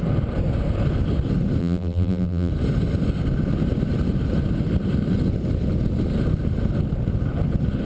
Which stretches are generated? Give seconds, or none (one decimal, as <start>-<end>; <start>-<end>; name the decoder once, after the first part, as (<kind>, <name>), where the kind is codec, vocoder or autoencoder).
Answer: 1.6-2.5 (vocoder, BigVGAN v2)